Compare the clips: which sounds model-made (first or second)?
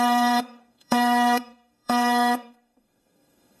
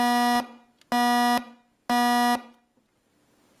first